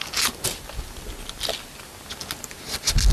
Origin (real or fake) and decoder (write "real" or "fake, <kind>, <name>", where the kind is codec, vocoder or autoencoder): real